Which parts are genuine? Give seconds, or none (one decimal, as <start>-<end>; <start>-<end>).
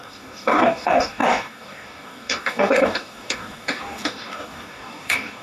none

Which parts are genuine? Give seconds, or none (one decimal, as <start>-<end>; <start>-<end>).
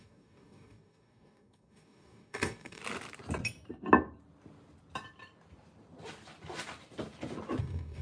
2.8-7.6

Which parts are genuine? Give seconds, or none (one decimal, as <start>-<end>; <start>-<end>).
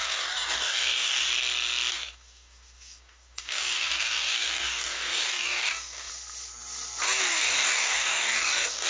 1.3-1.9; 6.1-7.2